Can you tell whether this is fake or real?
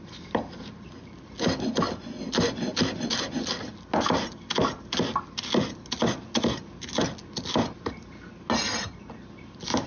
real